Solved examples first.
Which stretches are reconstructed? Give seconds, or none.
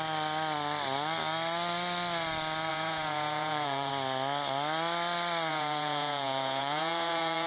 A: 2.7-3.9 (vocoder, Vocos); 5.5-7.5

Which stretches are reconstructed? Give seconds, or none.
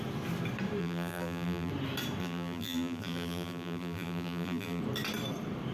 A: 0.8-1.7 (vocoder, BigVGAN v2); 2.2-4.8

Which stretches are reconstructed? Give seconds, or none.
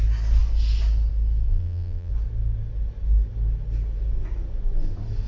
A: 1.5-2.1 (vocoder, BigVGAN v2)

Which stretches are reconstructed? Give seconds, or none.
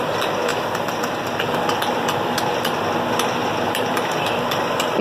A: 3.4-4.3 (vocoder, BigVGAN v2)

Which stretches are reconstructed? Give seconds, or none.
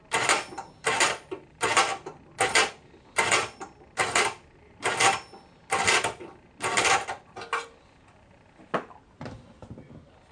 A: 0.0-1.9 (vocoder, BigVGAN v2); 2.7-10.3